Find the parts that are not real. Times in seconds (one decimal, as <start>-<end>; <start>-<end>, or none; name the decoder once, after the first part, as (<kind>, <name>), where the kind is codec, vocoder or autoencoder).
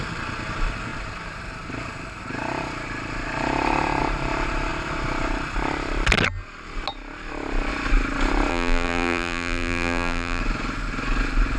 8.5-10.4 (vocoder, BigVGAN v2)